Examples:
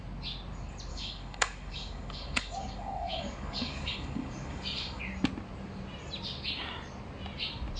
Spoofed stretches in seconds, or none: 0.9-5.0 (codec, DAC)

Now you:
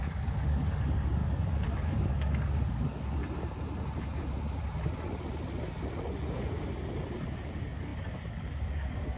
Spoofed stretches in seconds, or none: 0.0-3.2 (codec, DAC); 7.2-9.2

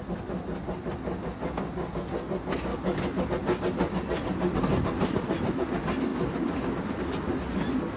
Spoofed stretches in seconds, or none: 2.7-3.2 (codec, DAC)

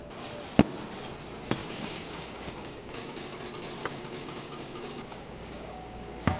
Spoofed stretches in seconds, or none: 1.6-3.4 (codec, DAC); 3.8-6.4

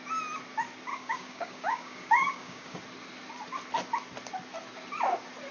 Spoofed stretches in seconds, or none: 0.9-2.8 (codec, DAC)

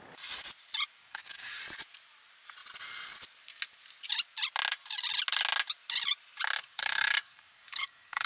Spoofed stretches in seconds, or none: 1.0-1.6 (codec, DAC); 6.6-8.3

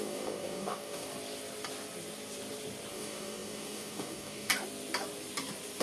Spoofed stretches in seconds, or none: 0.0-1.1 (codec, DAC); 2.9-4.5

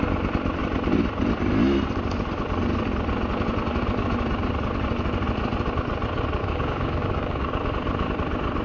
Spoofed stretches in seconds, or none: 6.4-7.7 (codec, DAC)